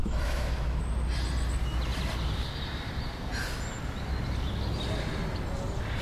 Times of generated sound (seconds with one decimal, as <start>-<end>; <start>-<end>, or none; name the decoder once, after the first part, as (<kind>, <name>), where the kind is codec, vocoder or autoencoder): 0.0-0.8 (autoencoder, DAC-VAE)